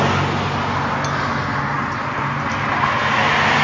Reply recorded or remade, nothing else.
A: recorded